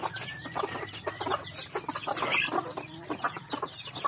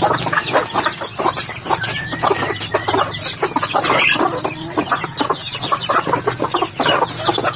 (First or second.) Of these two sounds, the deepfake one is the first